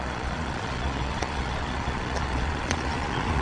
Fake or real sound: fake